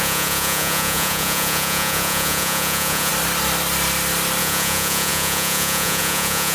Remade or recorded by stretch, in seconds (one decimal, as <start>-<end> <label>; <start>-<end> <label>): 0.0-3.1 remade; 3.1-4.4 recorded; 4.4-6.5 remade